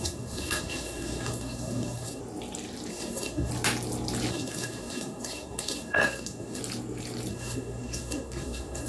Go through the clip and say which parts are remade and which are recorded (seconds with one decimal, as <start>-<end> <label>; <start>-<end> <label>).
0.0-2.2 remade; 2.2-2.9 recorded; 2.9-3.5 remade; 3.5-4.3 recorded; 4.3-6.6 remade; 6.6-7.3 recorded; 7.3-8.9 remade